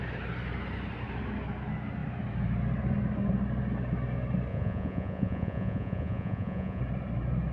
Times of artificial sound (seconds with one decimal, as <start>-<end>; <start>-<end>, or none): 4.5-6.8